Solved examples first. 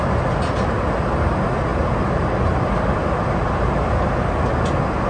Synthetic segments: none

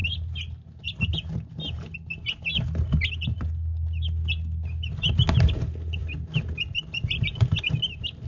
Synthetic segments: 6.0-7.6

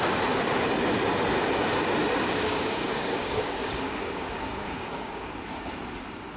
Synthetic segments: 2.0-5.3

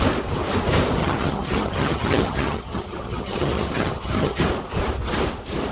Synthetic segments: 1.0-4.4

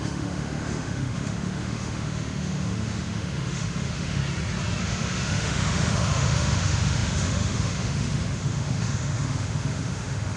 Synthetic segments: 0.0-4.2; 4.8-10.4

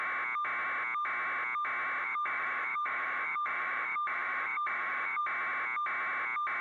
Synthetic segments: 2.0-5.2

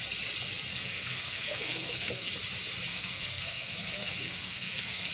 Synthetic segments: 0.7-2.3; 2.9-5.1

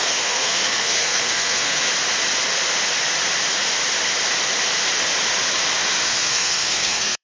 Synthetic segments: 0.0-1.9; 6.2-7.2